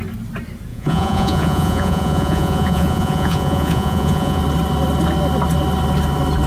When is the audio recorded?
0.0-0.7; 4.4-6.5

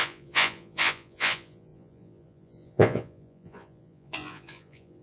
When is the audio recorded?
none